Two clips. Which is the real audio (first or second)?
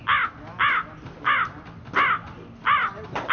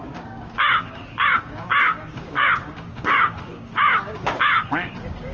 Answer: first